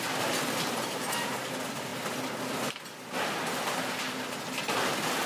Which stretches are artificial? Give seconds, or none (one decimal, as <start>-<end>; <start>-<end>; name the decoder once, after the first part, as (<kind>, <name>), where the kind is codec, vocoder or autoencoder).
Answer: none